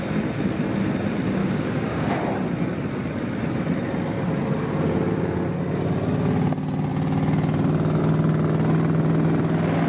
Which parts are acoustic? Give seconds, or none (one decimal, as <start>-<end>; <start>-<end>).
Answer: 0.0-1.4; 2.1-9.9